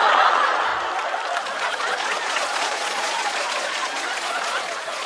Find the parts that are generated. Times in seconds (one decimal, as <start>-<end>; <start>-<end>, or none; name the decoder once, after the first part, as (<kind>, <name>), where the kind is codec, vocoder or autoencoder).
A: 0.0-0.7 (vocoder, Vocos); 1.6-5.1